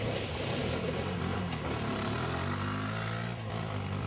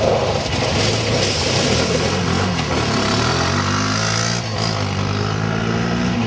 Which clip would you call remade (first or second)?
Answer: first